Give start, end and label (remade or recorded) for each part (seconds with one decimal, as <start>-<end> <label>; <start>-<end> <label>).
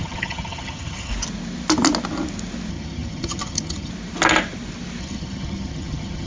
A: 0.0-1.1 remade; 1.1-2.7 recorded; 2.7-3.9 remade; 3.9-5.0 recorded; 5.0-6.3 remade